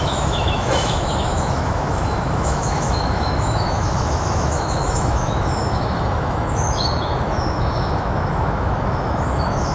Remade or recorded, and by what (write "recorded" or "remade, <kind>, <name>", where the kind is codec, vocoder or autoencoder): remade, autoencoder, DAC-VAE